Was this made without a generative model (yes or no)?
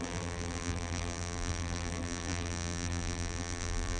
no